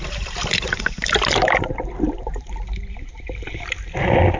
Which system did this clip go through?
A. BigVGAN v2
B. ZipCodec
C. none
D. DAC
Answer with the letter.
A